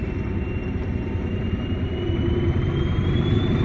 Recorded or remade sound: remade